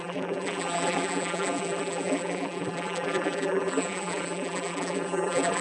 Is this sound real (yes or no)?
no